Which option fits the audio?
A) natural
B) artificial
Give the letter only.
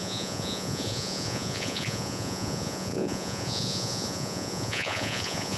B